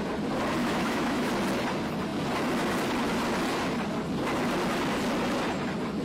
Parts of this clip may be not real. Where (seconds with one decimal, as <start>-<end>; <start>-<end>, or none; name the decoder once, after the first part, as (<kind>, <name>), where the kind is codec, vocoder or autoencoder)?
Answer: 0.6-1.3 (autoencoder, DAC-VAE)